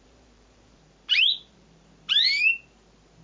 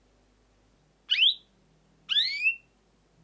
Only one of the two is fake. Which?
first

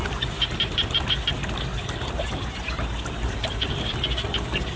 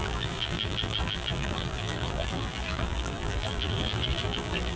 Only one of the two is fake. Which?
second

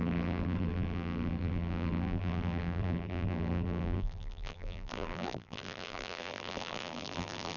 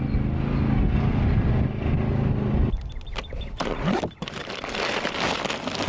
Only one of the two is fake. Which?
first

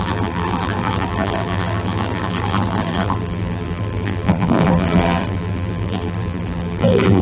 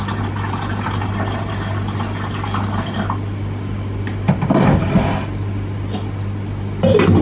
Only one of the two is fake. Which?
first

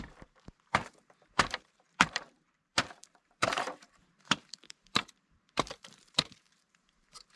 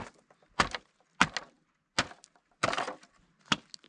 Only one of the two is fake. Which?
first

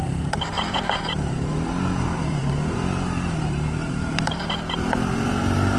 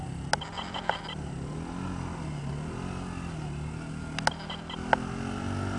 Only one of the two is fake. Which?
first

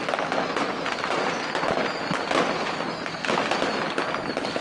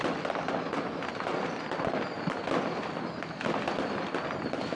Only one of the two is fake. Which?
second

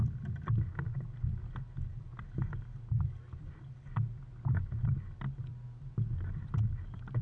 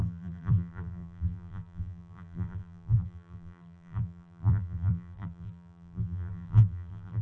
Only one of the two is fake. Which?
second